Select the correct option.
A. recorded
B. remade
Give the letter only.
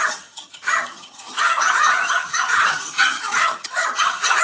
B